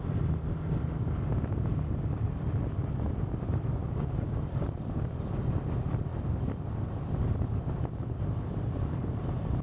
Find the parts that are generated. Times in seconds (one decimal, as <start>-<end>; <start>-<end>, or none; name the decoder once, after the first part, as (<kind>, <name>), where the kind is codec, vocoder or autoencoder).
3.8-4.4 (codec, DAC)